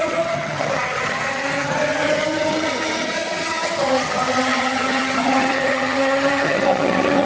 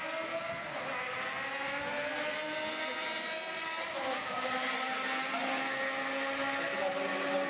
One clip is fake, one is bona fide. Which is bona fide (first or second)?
second